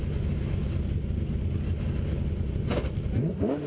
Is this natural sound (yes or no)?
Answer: yes